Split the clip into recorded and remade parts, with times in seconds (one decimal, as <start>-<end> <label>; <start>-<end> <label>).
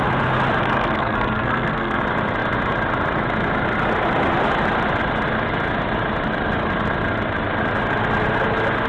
0.0-0.6 recorded; 0.6-2.0 remade; 2.0-8.9 recorded